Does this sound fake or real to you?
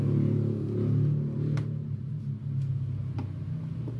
real